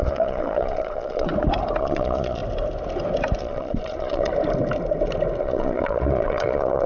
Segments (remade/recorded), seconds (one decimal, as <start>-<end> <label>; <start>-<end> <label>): 0.0-1.3 remade; 1.3-1.8 recorded; 1.8-2.4 remade; 2.4-3.4 recorded; 3.4-4.3 remade; 4.3-5.4 recorded; 5.4-6.9 remade